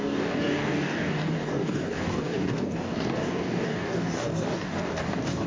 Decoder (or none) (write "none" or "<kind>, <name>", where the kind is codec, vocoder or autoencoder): codec, DAC